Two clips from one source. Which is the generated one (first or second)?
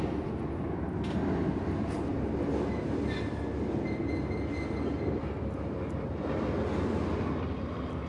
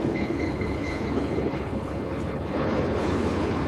second